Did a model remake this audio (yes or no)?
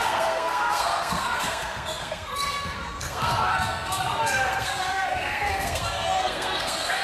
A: yes